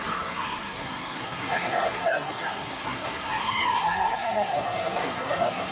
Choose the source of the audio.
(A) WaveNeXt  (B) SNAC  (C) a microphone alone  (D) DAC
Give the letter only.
B